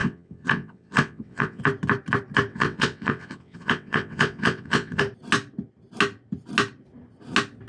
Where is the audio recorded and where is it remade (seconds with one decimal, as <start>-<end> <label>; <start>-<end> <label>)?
0.0-1.6 remade; 1.6-2.5 recorded; 2.5-5.0 remade; 5.0-7.7 recorded